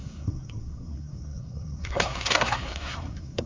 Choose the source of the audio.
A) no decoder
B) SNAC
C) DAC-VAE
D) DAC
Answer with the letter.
B